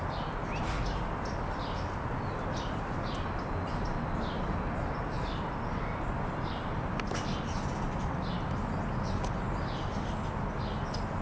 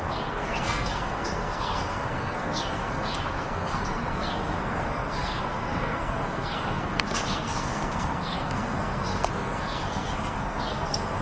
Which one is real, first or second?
first